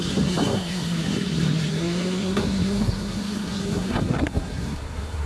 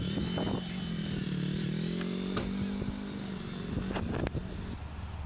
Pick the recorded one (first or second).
second